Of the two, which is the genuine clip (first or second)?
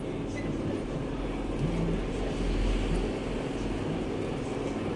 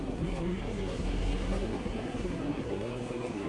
first